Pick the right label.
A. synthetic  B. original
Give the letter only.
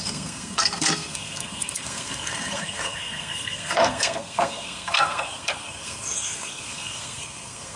A